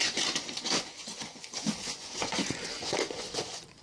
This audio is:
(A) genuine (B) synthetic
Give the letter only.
B